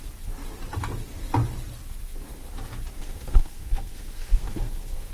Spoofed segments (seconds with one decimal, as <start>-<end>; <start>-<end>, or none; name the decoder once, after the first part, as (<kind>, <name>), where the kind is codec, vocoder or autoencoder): 3.0-5.1 (codec, SNAC)